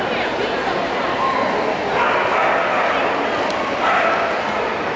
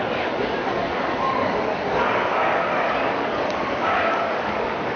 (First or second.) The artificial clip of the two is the second